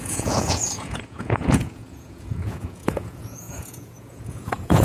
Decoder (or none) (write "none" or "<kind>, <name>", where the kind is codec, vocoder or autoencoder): vocoder, Vocos